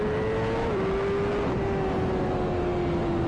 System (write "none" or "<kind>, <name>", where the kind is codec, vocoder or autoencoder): none